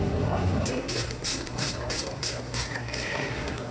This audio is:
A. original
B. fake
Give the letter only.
B